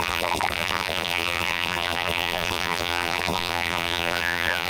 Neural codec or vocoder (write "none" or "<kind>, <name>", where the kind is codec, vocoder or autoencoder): vocoder, BigVGAN v2